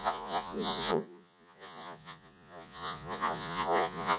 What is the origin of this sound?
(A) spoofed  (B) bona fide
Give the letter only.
A